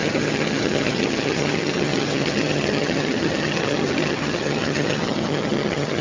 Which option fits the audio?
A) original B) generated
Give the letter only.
B